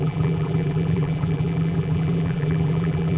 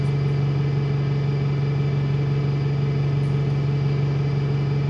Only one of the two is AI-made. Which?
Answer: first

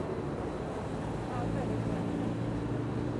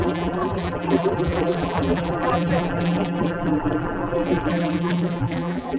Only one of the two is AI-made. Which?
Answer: second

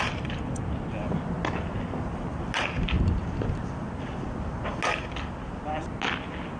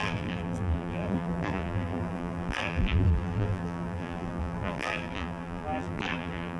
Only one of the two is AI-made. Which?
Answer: second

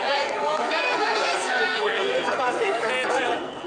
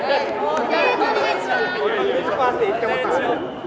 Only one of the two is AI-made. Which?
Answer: first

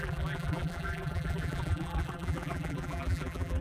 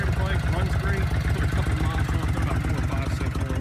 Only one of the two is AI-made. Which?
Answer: first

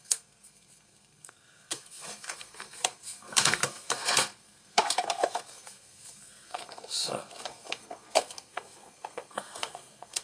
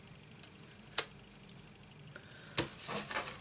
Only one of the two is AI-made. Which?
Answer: first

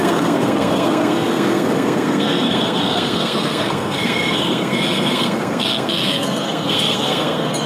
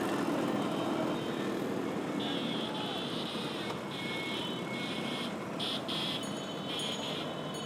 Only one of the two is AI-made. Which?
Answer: first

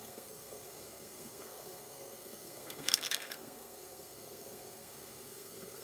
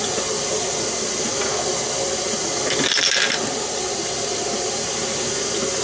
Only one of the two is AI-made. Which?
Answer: first